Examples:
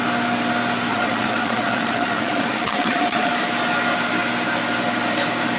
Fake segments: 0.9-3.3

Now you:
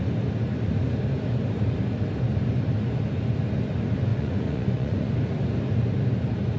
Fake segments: 4.1-5.1

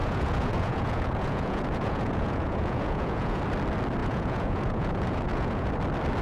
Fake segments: 0.0-3.4; 4.0-5.7

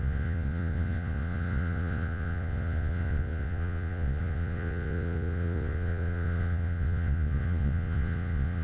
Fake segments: 0.0-8.6